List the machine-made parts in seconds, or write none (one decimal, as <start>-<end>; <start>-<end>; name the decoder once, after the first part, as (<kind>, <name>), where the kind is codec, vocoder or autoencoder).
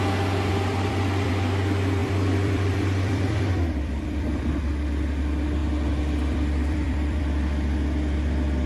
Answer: 0.5-1.3 (vocoder, BigVGAN v2); 2.0-4.4; 5.6-7.2